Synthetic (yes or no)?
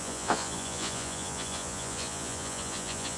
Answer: yes